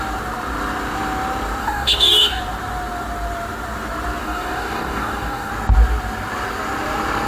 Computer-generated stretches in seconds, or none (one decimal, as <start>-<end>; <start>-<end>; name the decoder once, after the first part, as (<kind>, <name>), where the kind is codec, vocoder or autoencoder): 1.6-2.4 (codec, DAC); 4.2-5.5

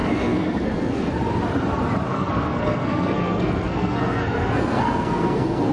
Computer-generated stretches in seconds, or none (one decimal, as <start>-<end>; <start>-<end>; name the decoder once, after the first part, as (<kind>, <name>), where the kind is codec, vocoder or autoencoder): 0.0-1.1 (codec, SNAC); 2.1-5.7